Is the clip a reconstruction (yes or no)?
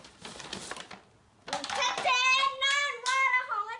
no